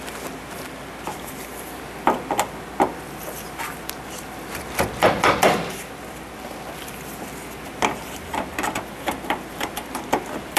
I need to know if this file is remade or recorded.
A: recorded